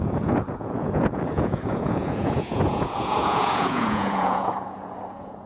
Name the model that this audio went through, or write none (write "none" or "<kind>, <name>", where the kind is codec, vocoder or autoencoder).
vocoder, Vocos